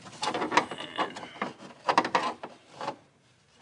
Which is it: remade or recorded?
recorded